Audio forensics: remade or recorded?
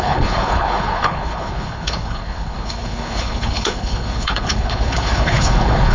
remade